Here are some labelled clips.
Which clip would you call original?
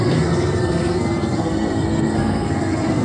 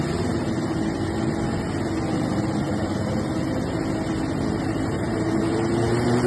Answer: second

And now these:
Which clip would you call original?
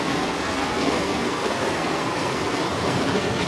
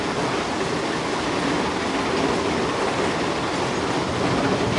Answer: second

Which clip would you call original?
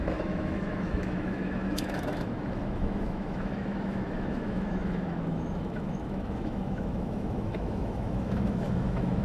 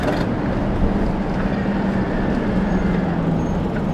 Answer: second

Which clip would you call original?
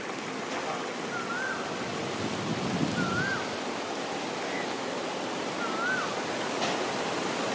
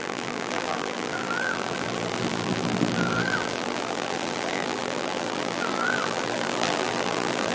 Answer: first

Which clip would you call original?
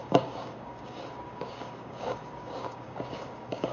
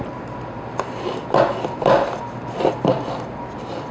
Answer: second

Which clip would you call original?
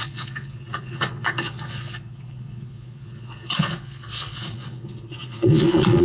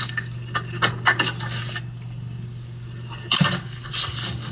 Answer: second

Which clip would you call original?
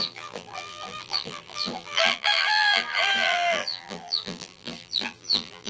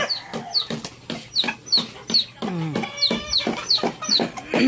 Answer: second